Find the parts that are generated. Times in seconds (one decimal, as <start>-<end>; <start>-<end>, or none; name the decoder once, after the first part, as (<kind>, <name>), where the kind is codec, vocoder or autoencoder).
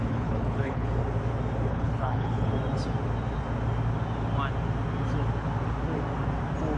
0.0-1.0 (codec, HILCodec); 1.7-2.5